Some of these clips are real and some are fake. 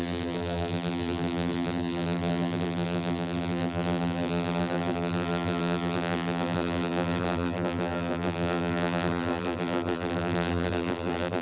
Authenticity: fake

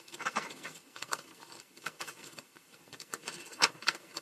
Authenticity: fake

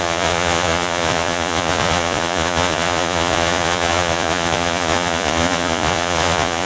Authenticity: fake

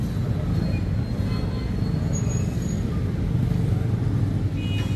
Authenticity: real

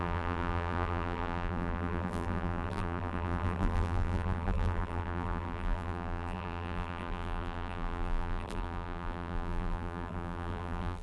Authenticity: fake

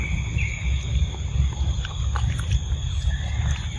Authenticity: real